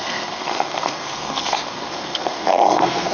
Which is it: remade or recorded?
remade